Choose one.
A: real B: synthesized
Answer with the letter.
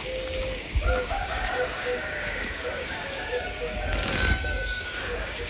B